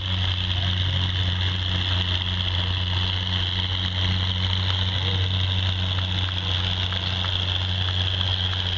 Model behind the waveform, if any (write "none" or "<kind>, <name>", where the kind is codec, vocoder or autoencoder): none